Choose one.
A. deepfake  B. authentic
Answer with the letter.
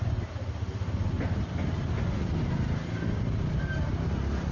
B